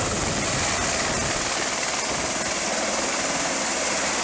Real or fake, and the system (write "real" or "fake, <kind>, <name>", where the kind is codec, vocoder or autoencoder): real